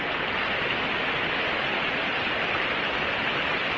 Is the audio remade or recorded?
recorded